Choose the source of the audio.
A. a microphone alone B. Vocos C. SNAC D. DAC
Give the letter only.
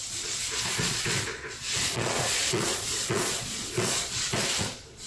B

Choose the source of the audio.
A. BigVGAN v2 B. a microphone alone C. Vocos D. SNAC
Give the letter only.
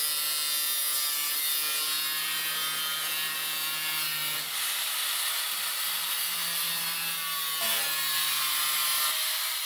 B